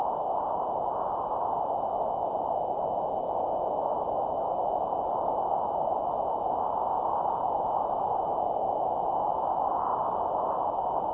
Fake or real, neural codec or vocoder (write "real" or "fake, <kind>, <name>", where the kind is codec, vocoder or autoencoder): real